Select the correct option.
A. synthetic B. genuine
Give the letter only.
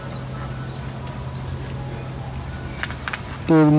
B